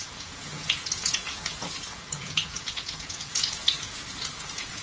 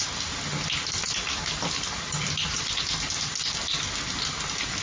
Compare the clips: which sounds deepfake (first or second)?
first